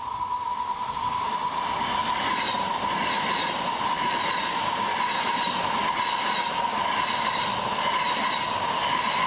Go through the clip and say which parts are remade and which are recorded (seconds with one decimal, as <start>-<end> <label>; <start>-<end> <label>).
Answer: 0.0-2.0 recorded; 2.0-4.8 remade; 4.8-9.3 recorded